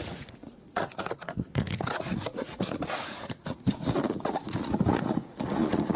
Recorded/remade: remade